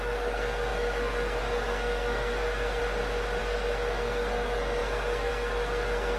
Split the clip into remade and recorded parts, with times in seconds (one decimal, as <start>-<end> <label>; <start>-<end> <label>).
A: 0.0-2.8 remade; 2.8-3.4 recorded; 3.4-6.2 remade